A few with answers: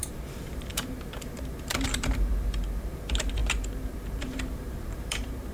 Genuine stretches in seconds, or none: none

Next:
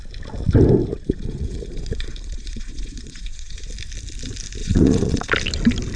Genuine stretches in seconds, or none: 0.0-0.9; 3.7-4.6; 5.3-6.0

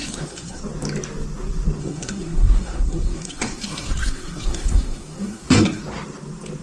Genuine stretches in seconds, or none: 0.6-1.8; 5.8-6.6

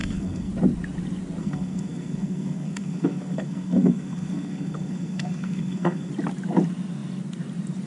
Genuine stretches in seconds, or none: 0.5-1.4; 6.1-7.9

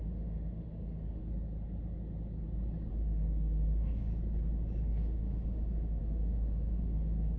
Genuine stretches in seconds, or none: 1.2-2.9; 4.1-4.8